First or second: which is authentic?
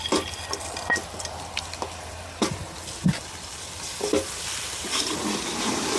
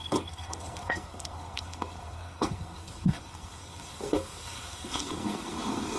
first